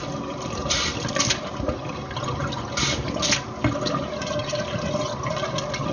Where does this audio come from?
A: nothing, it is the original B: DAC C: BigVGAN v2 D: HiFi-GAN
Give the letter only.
A